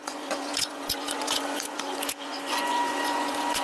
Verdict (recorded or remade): remade